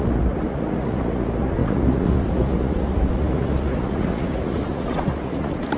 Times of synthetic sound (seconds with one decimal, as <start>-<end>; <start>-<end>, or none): 0.0-5.8